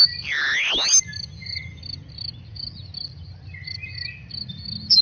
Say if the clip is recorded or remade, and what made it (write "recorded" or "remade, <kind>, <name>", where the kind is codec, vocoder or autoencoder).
recorded